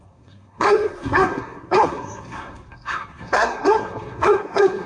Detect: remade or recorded remade